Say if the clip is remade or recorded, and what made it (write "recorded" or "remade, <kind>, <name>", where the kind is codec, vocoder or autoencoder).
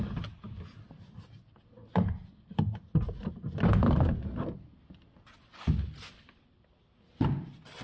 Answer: recorded